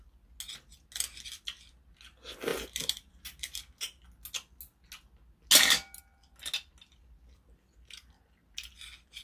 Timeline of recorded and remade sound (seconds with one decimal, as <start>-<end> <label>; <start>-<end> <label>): 0.0-9.2 recorded